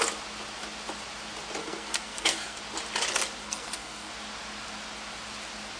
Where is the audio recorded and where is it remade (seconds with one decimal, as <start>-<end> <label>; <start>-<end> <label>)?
0.0-1.6 recorded; 1.6-2.6 remade; 2.6-3.4 recorded; 3.4-4.1 remade; 4.1-5.8 recorded